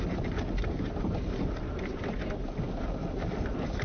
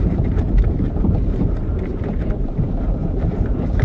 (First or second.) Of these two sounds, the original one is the first